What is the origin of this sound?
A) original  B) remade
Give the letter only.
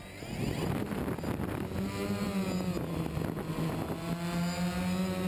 A